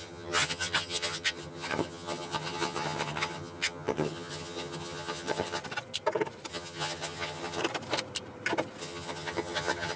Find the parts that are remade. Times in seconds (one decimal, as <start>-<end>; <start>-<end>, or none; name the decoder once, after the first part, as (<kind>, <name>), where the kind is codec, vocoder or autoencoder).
0.0-5.6 (vocoder, HiFi-GAN); 6.5-7.6; 8.8-10.0